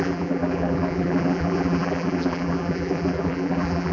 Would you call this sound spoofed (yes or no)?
yes